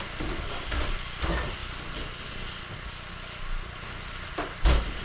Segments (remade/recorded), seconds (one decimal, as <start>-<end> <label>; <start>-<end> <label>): 0.0-5.0 recorded